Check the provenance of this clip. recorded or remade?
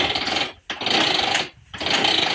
recorded